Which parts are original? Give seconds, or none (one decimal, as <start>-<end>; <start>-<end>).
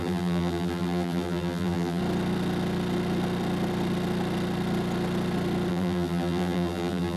2.0-5.7